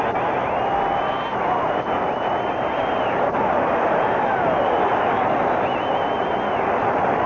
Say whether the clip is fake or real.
real